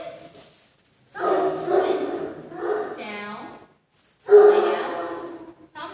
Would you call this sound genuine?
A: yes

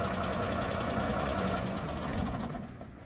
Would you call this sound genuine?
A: no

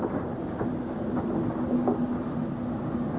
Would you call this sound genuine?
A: yes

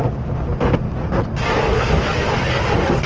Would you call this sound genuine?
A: yes